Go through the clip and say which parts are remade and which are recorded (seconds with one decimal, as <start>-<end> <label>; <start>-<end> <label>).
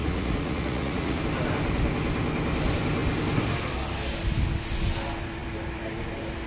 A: 0.0-1.2 remade; 1.2-6.5 recorded